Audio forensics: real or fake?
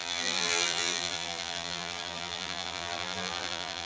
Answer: fake